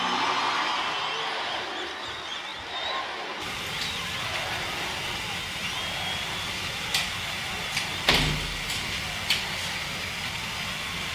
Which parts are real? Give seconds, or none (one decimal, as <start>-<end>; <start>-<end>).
0.0-11.1

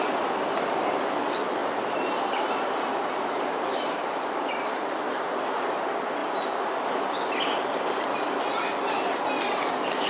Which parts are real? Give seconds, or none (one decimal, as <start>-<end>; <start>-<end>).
0.0-1.6; 5.2-10.1

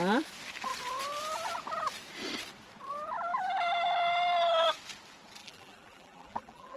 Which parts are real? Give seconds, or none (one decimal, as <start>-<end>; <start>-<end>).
0.0-5.4

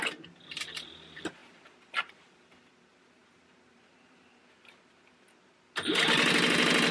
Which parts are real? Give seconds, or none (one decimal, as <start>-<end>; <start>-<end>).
0.0-6.9

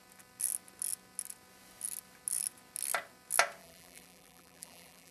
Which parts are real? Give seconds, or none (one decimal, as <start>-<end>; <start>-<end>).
0.0-3.6